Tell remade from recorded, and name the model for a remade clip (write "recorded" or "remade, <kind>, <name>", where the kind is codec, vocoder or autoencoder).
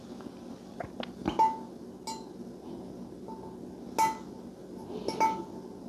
recorded